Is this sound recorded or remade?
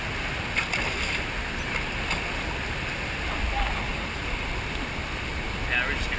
recorded